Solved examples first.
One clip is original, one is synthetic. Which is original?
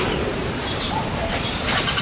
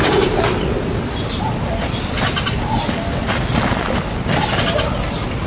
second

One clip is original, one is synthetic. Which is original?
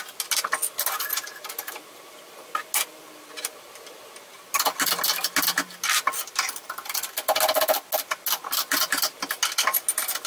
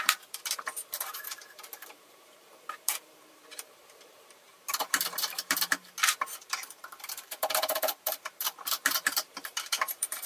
first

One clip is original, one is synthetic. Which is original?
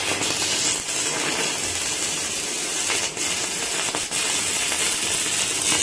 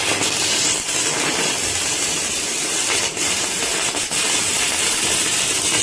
first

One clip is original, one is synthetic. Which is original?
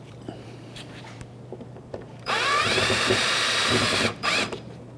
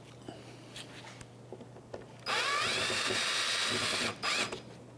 second